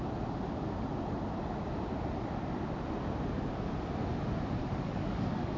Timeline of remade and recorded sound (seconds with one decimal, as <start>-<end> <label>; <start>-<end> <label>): 0.0-4.6 recorded; 4.6-5.6 remade